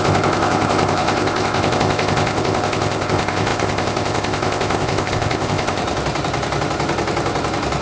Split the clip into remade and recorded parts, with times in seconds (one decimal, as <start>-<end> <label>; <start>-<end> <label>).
0.0-5.8 remade; 5.8-7.8 recorded

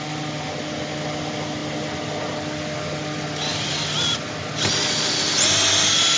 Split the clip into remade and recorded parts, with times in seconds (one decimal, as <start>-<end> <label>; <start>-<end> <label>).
0.0-6.2 recorded

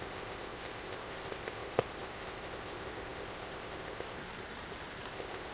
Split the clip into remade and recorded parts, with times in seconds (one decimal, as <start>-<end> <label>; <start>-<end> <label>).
0.0-4.2 remade; 4.2-5.1 recorded; 5.1-5.5 remade

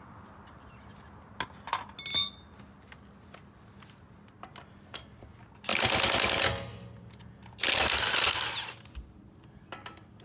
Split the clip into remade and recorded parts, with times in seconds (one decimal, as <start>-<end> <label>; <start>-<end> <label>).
0.0-10.2 recorded

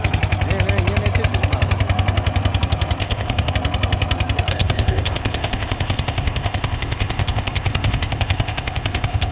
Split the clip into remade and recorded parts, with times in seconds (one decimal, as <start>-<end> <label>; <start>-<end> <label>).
0.0-3.0 recorded; 3.0-3.5 remade; 3.5-4.5 recorded; 4.5-9.3 remade

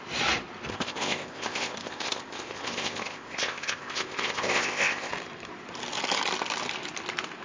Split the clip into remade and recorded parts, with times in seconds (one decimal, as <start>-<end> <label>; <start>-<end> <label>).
0.0-0.7 recorded; 0.7-5.1 remade; 5.1-7.4 recorded

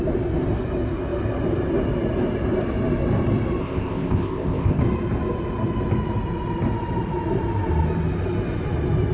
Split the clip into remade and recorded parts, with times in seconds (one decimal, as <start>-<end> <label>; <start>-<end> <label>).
0.0-3.6 recorded; 3.6-4.8 remade; 4.8-9.1 recorded

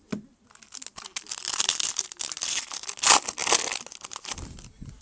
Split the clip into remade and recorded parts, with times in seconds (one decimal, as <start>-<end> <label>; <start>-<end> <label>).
0.0-5.0 recorded